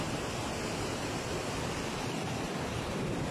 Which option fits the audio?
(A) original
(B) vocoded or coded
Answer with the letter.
A